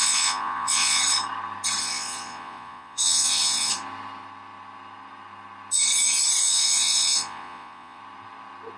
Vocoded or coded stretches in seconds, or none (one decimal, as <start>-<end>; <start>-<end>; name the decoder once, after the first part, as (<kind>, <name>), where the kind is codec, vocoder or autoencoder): 0.0-1.0 (vocoder, Vocos); 1.8-3.7; 6.4-8.0